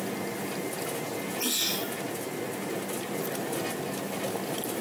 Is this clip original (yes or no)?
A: yes